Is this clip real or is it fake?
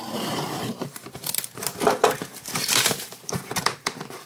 fake